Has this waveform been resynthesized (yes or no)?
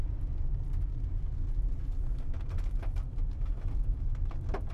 no